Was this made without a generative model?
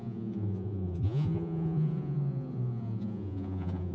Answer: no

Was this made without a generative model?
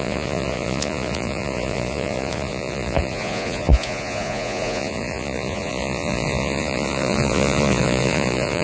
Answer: no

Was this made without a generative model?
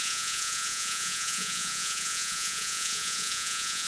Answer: no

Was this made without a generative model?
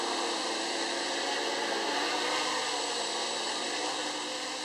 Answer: yes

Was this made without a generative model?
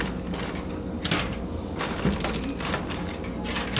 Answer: yes